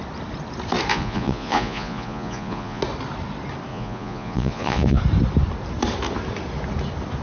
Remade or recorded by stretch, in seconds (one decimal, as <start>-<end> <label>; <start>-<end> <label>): 0.0-0.9 recorded; 0.9-2.8 remade; 2.8-3.7 recorded; 3.7-5.0 remade; 5.0-7.2 recorded